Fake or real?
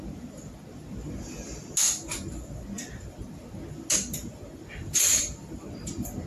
real